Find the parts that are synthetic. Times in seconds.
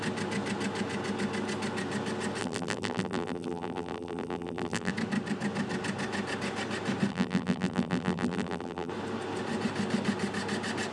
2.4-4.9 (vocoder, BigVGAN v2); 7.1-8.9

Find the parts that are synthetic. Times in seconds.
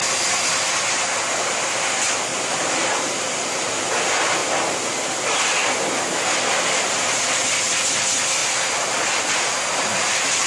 2.3-4.0 (vocoder, BigVGAN v2); 8.4-9.2; 9.9-10.5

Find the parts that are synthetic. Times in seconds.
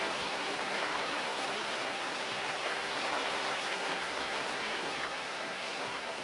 0.0-6.2 (codec, SNAC)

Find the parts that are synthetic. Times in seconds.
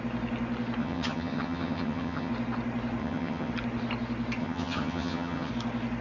0.8-2.3 (vocoder, HiFi-GAN); 3.0-3.5; 4.4-5.5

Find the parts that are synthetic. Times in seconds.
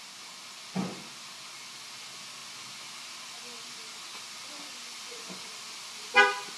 none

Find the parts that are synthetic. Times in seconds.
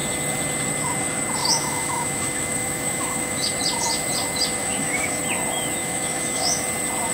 1.4-3.5 (autoencoder, DAC-VAE); 4.6-5.2; 5.8-6.6